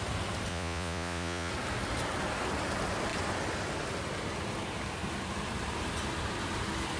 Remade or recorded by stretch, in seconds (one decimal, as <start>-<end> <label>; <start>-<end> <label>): 0.0-0.5 recorded; 0.5-1.5 remade; 1.5-7.0 recorded